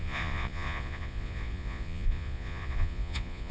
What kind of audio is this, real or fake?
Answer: fake